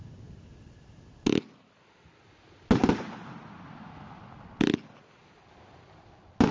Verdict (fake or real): real